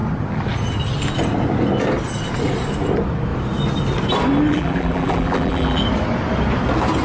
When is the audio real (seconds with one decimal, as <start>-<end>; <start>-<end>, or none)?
0.0-4.5; 5.8-7.0